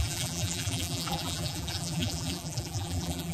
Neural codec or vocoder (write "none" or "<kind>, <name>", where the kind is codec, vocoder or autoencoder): vocoder, BigVGAN v2